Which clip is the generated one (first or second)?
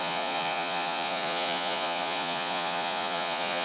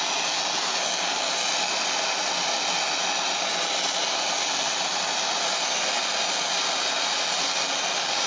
first